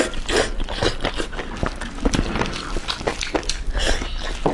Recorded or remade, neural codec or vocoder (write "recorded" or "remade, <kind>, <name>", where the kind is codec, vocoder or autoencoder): recorded